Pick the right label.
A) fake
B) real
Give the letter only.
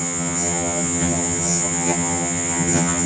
A